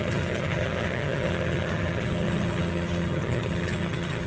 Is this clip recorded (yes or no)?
no